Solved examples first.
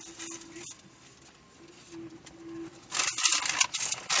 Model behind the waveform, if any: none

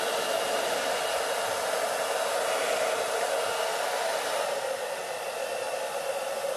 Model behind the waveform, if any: none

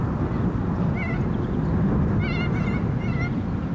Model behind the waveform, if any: none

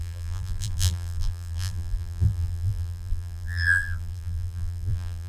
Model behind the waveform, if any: vocoder, BigVGAN v2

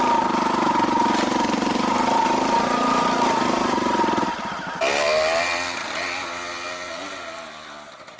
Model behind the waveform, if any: none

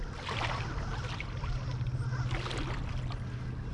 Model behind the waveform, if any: none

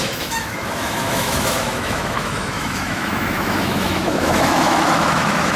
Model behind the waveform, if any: autoencoder, DAC-VAE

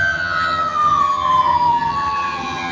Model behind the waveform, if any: vocoder, HiFi-GAN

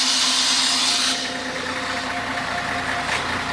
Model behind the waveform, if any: none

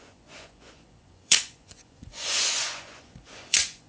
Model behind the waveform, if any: vocoder, Vocos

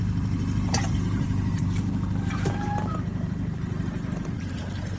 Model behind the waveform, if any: vocoder, BigVGAN v2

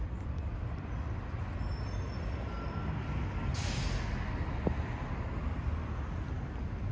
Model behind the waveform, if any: none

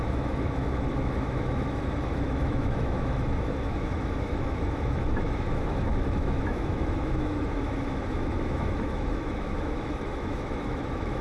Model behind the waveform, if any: autoencoder, DAC-VAE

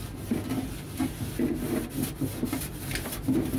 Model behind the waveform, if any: none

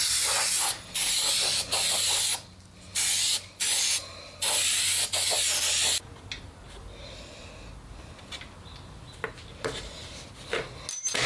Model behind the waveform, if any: none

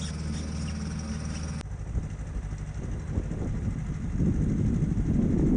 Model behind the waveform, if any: none